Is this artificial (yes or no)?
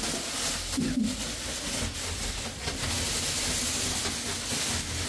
no